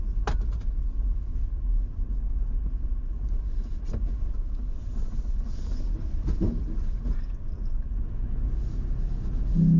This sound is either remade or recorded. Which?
recorded